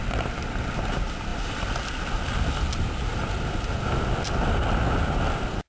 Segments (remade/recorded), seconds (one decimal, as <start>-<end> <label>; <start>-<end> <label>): 0.0-5.7 recorded